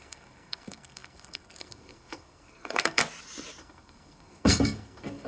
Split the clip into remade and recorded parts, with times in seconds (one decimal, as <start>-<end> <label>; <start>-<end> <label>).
0.0-3.0 remade; 3.0-3.6 recorded; 3.6-5.3 remade